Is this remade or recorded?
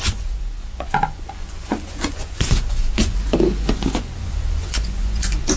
remade